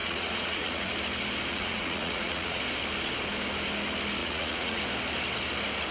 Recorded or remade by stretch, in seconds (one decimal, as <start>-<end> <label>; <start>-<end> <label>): 0.0-0.9 remade; 0.9-1.5 recorded; 1.5-2.6 remade; 2.6-4.2 recorded; 4.2-4.8 remade; 4.8-5.9 recorded